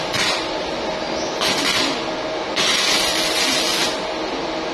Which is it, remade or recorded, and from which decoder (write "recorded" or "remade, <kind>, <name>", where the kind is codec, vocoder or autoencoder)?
recorded